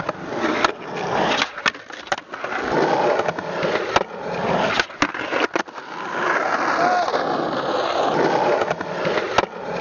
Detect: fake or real real